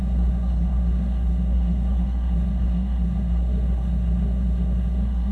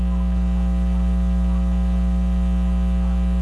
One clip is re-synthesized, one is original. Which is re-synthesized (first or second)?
first